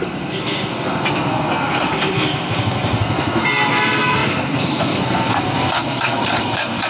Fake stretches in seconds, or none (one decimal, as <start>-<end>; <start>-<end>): 0.0-6.9

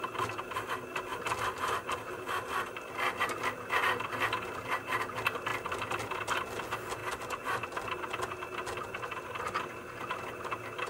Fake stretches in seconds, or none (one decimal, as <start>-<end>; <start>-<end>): none

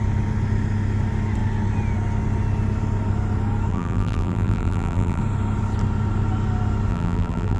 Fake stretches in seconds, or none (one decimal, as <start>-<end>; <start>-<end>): 3.7-5.2; 6.9-7.6

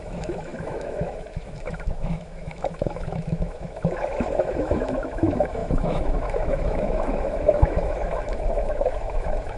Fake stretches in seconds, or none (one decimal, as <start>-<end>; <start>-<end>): 0.0-9.6

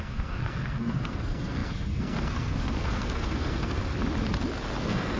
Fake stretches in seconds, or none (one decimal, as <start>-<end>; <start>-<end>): 0.0-3.8; 4.8-5.2

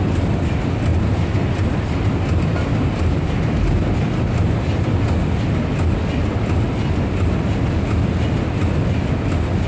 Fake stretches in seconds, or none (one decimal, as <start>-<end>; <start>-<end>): none

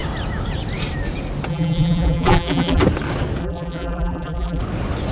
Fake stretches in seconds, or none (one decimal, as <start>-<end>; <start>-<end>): 1.5-2.8; 3.4-4.6